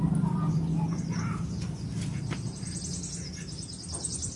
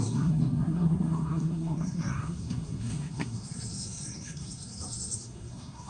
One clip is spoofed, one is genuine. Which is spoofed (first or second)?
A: second